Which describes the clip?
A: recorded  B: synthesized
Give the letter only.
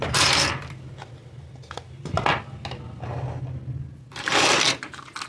A